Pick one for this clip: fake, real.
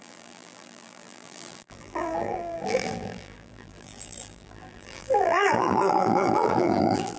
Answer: fake